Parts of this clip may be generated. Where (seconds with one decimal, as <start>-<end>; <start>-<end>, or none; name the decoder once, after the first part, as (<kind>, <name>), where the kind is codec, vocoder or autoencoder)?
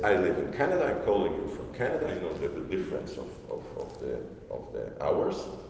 1.2-2.1 (vocoder, BigVGAN v2); 2.8-5.2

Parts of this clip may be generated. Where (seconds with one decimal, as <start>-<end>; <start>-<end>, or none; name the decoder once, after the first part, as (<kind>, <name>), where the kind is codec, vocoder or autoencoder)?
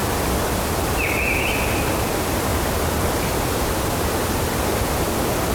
none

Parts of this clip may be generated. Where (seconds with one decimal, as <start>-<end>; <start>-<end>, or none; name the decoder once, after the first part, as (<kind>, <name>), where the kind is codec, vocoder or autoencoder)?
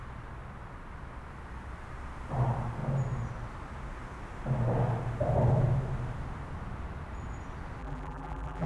7.8-8.7 (vocoder, BigVGAN v2)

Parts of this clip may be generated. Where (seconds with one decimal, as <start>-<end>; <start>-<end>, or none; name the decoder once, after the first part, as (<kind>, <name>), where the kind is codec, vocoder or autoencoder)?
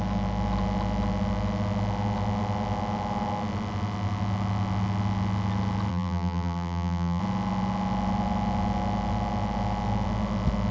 5.9-7.2 (vocoder, BigVGAN v2)